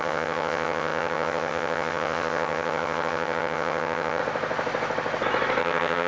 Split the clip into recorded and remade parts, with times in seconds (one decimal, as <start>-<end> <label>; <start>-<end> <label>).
0.0-4.2 remade; 4.2-5.6 recorded; 5.6-6.1 remade